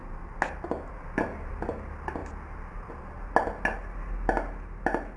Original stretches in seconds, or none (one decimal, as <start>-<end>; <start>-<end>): 0.0-5.2